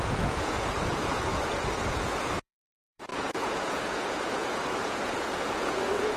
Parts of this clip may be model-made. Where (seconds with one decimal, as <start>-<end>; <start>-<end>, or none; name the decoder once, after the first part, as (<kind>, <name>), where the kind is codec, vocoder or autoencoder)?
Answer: 0.0-1.3 (vocoder, Vocos); 1.9-6.2